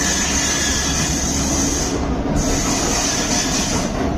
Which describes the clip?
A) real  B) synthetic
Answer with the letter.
A